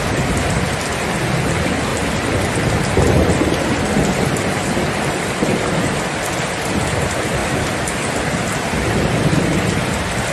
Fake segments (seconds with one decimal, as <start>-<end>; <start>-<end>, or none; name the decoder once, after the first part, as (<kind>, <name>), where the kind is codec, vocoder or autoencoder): none